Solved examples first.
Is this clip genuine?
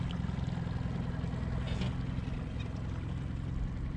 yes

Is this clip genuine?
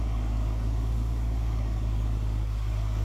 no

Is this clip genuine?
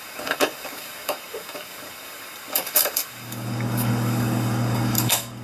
no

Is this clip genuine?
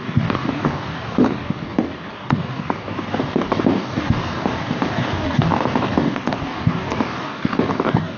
no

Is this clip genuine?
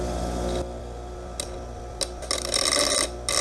yes